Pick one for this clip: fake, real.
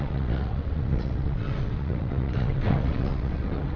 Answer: fake